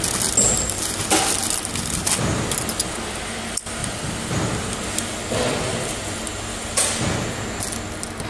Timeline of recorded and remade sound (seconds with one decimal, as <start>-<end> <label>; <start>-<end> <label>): 0.0-8.3 recorded